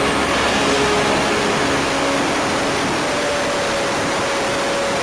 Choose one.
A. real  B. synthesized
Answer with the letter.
A